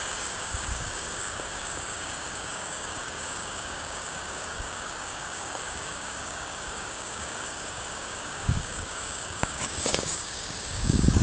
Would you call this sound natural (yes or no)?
no